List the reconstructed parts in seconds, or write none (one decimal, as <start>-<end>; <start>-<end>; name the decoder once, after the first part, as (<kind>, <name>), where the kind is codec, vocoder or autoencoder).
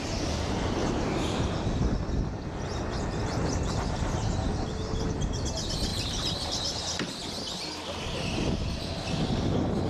5.9-6.8 (vocoder, BigVGAN v2)